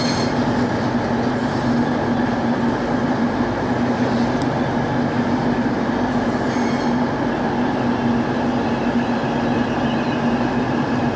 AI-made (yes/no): no